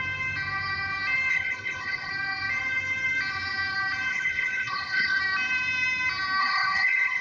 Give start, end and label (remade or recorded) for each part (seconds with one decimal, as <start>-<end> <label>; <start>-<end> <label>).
0.0-1.3 recorded; 1.3-2.1 remade; 2.1-4.1 recorded; 4.1-5.2 remade; 5.2-6.4 recorded; 6.4-7.2 remade